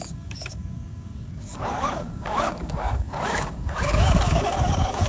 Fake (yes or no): yes